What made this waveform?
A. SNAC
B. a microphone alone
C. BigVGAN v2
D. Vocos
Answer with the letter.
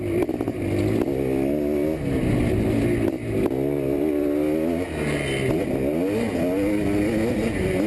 B